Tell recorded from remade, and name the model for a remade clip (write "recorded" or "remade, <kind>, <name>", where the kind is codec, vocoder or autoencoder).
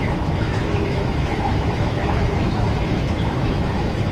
remade, autoencoder, DAC-VAE